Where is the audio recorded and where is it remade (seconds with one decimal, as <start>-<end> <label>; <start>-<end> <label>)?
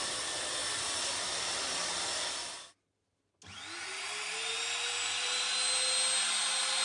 0.0-6.8 recorded